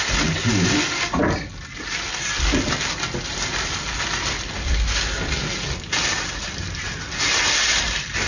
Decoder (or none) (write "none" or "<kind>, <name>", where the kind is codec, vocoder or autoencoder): none